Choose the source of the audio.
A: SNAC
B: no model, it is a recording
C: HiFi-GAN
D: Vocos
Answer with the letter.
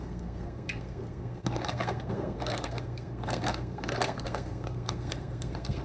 A